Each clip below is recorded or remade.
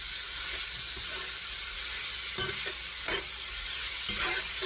recorded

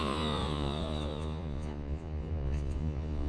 remade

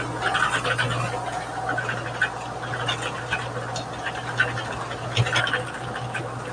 recorded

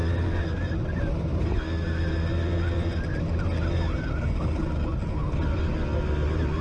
recorded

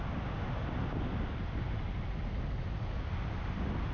recorded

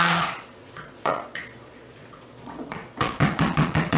remade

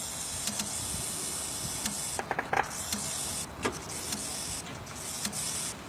recorded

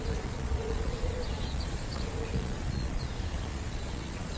remade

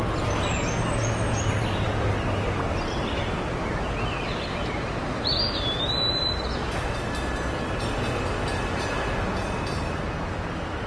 recorded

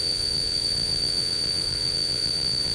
remade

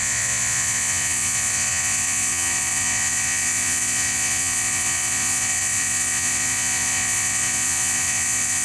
remade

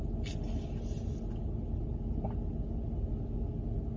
recorded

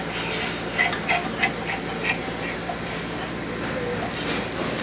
recorded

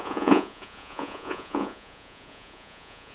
remade